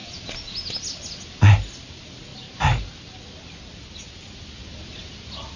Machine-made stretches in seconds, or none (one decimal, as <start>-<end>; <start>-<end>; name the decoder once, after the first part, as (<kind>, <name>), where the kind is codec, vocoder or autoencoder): none